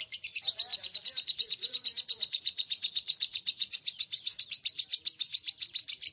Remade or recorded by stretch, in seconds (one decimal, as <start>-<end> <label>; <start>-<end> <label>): 0.0-0.7 recorded; 0.7-4.4 remade; 4.4-6.1 recorded